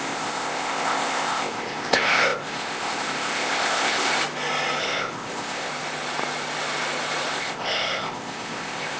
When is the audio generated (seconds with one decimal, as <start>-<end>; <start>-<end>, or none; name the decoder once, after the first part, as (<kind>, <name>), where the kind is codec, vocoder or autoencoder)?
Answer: 0.0-4.1 (codec, ZipCodec); 4.8-5.7; 7.3-9.0